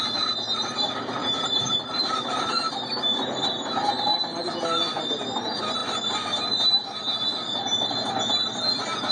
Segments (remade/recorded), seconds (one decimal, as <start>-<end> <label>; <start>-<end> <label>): 0.0-1.2 recorded; 1.2-3.5 remade; 3.5-9.1 recorded